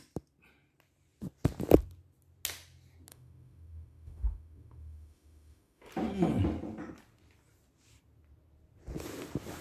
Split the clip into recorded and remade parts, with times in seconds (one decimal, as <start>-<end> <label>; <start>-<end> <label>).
0.0-3.1 recorded; 3.1-5.9 remade; 5.9-9.6 recorded